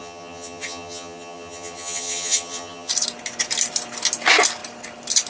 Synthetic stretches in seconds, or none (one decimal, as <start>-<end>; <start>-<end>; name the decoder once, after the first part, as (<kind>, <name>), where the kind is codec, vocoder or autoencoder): 0.0-2.9 (vocoder, HiFi-GAN)

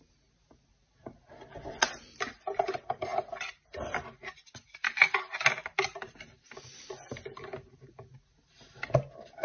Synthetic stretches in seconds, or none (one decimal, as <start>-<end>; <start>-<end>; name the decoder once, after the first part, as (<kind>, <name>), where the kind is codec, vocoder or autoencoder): none

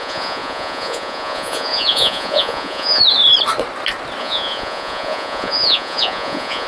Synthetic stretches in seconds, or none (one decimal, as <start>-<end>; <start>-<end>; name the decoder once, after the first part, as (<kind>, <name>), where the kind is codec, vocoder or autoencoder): 0.0-3.0 (vocoder, Vocos); 4.2-6.7

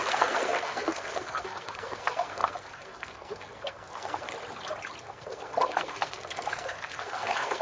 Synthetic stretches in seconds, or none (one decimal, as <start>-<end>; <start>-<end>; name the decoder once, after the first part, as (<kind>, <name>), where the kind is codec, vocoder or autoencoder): 0.0-4.3 (codec, SNAC); 5.0-7.6

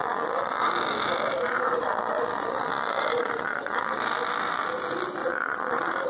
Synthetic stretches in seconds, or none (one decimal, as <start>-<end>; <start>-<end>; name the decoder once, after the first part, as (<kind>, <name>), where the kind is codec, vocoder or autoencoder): 0.0-0.7 (vocoder, Vocos); 1.8-4.0; 5.2-6.1

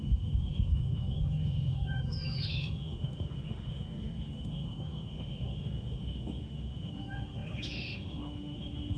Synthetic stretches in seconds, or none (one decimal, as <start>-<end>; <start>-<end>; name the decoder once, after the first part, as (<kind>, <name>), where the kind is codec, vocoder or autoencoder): 0.0-9.0 (autoencoder, DAC-VAE)